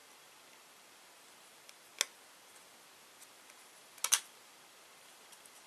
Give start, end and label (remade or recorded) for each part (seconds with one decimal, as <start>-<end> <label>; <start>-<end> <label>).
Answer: 0.0-5.7 recorded